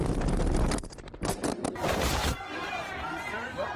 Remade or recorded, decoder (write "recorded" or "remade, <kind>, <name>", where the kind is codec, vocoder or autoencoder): remade, vocoder, BigVGAN v2